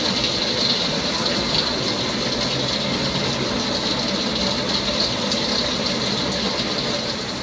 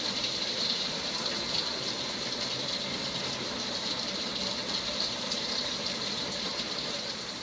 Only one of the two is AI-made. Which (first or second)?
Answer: second